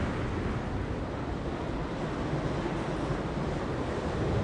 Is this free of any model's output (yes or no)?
yes